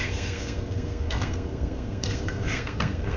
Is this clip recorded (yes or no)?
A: no